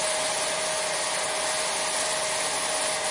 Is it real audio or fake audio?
real